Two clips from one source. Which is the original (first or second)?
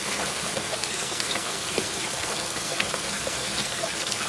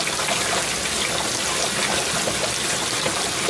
second